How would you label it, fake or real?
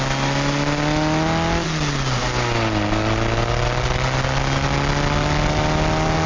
real